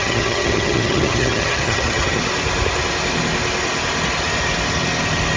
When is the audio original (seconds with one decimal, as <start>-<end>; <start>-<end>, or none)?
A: 2.2-5.4